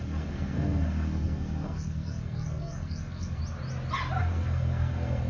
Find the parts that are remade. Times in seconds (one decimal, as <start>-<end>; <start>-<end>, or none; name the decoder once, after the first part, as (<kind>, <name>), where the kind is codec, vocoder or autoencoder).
0.0-3.4 (codec, SNAC); 4.2-5.3